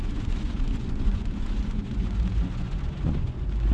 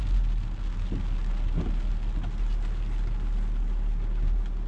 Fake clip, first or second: first